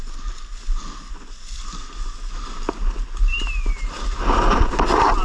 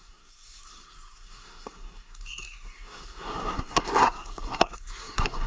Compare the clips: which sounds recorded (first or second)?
first